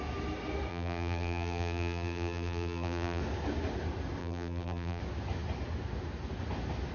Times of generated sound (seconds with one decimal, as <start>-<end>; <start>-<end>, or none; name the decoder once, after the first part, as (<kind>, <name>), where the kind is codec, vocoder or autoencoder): 0.7-3.2 (vocoder, BigVGAN v2); 4.2-5.0

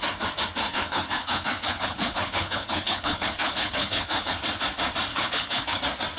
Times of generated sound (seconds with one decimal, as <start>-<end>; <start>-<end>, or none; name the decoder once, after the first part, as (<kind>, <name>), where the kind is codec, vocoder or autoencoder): 0.6-4.3 (codec, HILCodec); 5.1-5.8

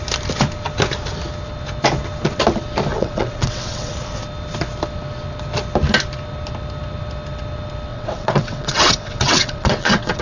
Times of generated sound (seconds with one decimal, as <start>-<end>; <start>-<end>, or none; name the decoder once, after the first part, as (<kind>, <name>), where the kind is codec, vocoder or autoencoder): 2.9-3.9 (vocoder, WaveNeXt); 7.9-10.2

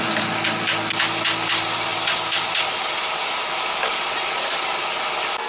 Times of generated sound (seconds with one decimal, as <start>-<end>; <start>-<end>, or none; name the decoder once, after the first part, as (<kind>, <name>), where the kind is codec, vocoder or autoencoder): none